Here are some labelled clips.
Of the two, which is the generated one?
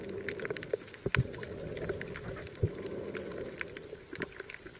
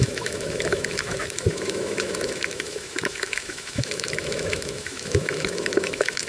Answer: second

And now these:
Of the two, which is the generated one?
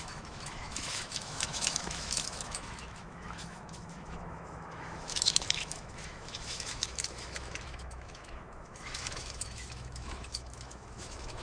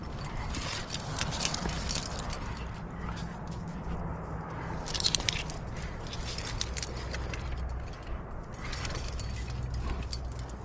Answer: first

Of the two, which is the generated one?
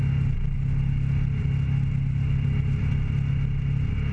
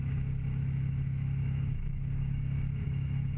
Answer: second